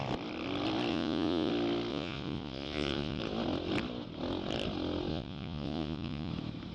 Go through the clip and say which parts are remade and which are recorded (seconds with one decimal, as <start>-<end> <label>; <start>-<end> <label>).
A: 0.0-0.9 recorded; 0.9-1.5 remade; 1.5-1.9 recorded; 1.9-3.2 remade; 3.2-5.1 recorded; 5.1-6.3 remade; 6.3-6.7 recorded